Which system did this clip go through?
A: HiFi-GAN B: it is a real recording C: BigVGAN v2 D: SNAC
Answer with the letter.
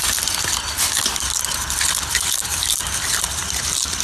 B